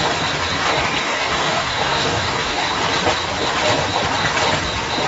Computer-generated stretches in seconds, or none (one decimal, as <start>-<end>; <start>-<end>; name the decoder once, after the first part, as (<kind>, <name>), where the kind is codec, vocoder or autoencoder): 1.0-2.8 (codec, DAC)